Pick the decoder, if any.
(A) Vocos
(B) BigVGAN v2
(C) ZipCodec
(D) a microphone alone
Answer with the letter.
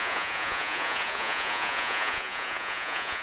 A